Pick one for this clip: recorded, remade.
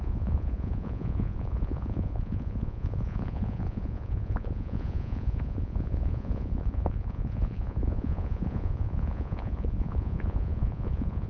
remade